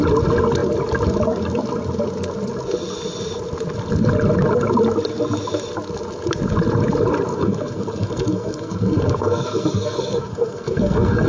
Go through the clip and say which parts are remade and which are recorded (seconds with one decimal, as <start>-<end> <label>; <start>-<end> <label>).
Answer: 0.0-7.3 recorded; 7.3-11.3 remade